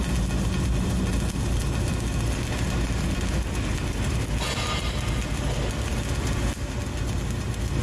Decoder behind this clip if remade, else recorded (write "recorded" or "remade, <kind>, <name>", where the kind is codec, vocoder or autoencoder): recorded